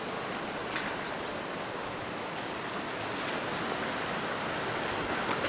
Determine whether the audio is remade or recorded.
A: recorded